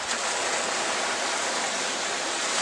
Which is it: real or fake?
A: real